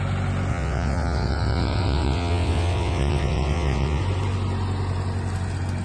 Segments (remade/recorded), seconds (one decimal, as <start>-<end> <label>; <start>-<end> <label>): 0.0-0.5 recorded; 0.5-4.0 remade; 4.0-5.8 recorded